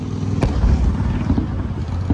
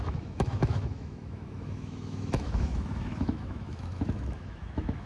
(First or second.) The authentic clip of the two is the first